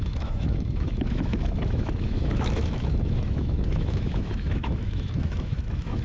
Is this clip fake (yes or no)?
yes